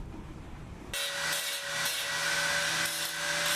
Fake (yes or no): no